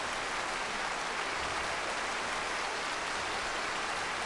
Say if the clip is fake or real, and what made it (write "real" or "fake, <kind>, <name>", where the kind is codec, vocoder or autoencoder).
real